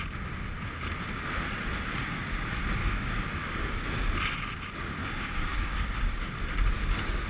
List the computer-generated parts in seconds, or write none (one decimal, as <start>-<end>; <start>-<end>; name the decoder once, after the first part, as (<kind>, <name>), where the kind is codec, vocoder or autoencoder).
2.8-4.1 (codec, DAC); 5.0-6.3